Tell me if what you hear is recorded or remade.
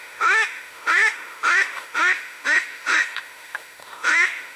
remade